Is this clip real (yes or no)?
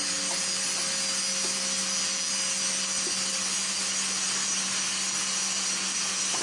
yes